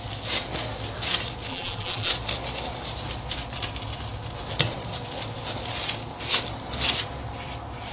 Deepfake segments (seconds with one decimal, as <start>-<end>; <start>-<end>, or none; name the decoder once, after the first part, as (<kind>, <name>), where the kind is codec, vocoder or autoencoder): 1.5-2.1 (vocoder, BigVGAN v2)